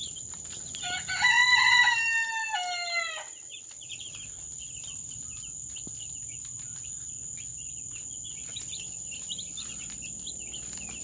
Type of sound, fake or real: real